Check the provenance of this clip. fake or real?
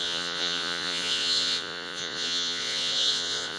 fake